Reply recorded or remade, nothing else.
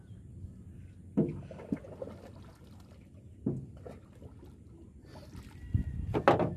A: recorded